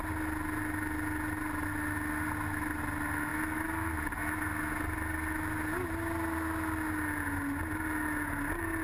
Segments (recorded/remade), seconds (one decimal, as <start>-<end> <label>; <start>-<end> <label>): 0.0-8.8 recorded